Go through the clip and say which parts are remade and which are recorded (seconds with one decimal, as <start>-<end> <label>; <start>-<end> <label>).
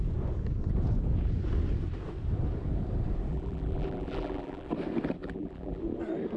0.0-3.3 recorded; 3.3-4.7 remade; 4.7-5.2 recorded; 5.2-5.8 remade; 5.8-6.4 recorded